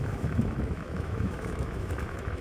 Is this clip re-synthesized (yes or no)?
yes